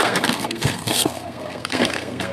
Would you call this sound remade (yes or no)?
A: yes